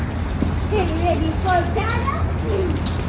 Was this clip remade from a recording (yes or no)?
no